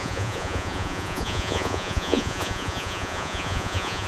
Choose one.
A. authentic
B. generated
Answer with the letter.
B